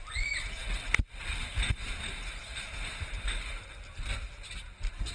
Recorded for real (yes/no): yes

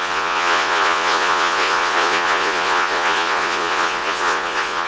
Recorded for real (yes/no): no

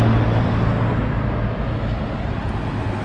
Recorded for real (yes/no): yes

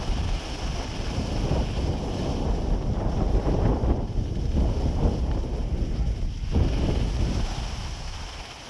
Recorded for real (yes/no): yes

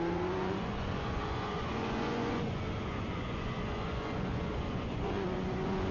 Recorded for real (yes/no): no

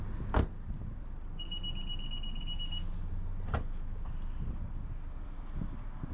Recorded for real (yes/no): yes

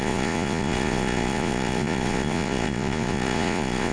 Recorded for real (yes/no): no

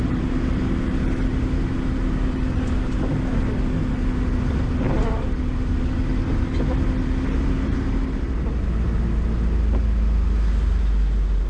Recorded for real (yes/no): yes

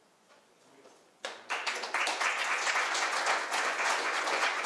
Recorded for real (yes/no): no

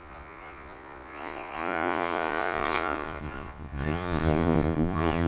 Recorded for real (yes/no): no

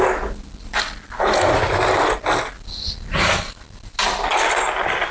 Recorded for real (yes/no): yes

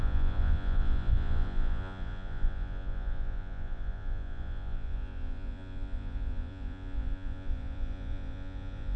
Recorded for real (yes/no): no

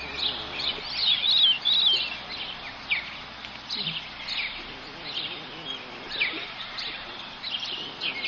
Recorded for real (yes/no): yes